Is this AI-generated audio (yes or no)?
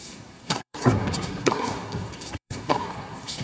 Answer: yes